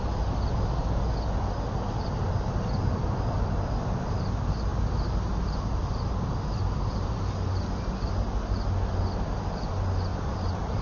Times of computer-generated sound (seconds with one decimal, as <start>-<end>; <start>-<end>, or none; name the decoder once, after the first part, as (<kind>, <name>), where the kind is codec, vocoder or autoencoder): 10.1-10.8 (vocoder, BigVGAN v2)